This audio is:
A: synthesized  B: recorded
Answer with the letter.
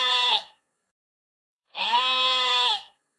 A